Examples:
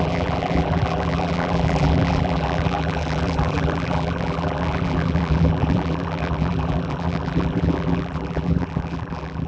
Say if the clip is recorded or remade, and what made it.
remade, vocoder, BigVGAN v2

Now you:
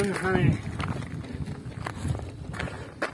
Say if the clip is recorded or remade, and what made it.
recorded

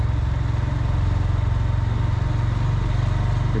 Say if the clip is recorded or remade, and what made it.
recorded